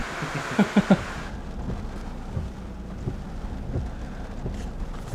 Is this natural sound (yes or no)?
yes